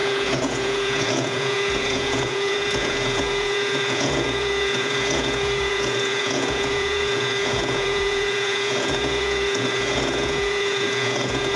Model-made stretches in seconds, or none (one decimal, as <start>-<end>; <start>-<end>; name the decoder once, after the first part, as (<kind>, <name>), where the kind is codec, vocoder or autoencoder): 0.0-11.6 (vocoder, Vocos)